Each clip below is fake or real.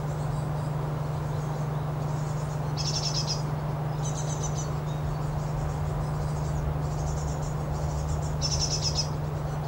real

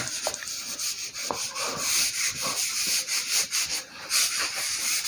real